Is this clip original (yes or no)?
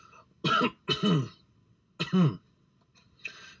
yes